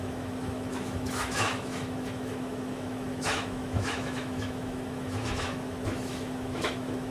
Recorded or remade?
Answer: remade